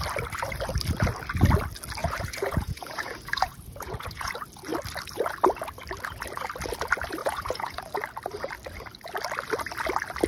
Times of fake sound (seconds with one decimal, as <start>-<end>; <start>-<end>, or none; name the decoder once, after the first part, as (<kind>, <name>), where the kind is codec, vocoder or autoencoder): 2.0-4.3 (vocoder, Vocos); 7.2-7.8

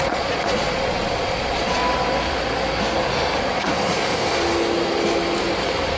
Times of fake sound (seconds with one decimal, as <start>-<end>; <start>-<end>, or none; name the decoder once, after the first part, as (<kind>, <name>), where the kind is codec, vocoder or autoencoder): 0.0-1.8 (vocoder, Vocos); 3.4-4.1

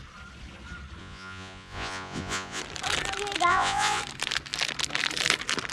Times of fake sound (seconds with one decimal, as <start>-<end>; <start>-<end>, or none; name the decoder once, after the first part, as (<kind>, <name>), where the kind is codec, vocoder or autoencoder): 1.0-2.6 (vocoder, Vocos); 3.5-4.0

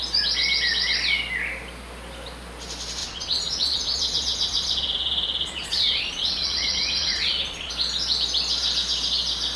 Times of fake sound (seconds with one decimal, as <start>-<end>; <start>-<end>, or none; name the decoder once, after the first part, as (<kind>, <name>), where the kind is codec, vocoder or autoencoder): 3.0-7.7 (vocoder, Vocos)

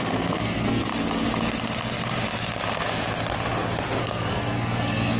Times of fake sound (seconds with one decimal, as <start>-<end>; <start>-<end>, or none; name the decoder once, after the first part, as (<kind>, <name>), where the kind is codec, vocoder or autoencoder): 0.0-0.9 (codec, SNAC); 4.0-5.2

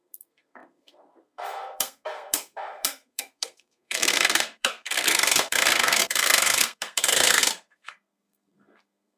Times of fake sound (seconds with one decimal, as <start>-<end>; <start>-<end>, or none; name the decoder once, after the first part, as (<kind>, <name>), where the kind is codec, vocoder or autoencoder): 0.0-9.2 (codec, SNAC)

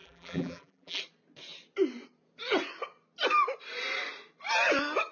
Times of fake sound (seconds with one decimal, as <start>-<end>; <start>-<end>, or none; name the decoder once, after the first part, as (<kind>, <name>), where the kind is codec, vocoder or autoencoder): 0.0-1.0 (vocoder, BigVGAN v2)